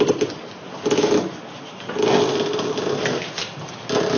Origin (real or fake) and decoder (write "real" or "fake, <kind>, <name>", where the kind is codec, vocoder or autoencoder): real